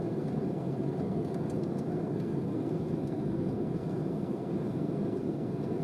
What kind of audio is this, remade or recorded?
remade